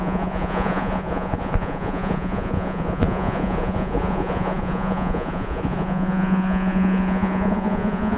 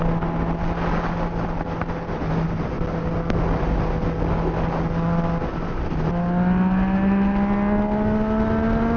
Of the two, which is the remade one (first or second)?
first